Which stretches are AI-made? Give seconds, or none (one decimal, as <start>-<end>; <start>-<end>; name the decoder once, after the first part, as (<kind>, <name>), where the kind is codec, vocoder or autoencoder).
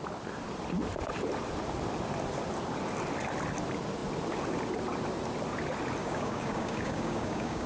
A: 6.0-7.7 (codec, DAC)